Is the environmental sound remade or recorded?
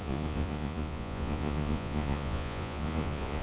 remade